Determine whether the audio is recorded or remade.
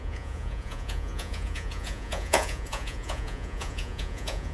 remade